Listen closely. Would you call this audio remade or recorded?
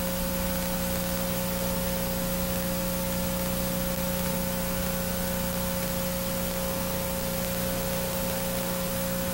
recorded